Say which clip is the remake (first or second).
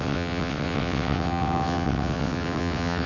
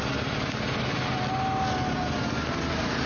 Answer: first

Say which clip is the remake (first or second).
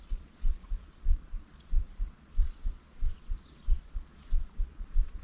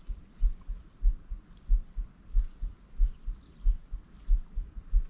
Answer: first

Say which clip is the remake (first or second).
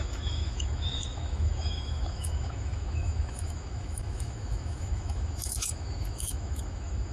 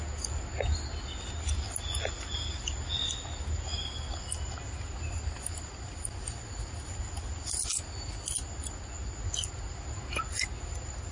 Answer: first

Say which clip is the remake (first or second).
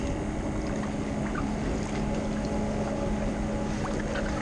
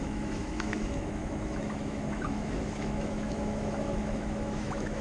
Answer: second